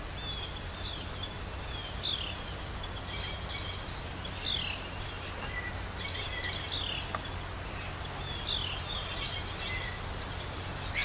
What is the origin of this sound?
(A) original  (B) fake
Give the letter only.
A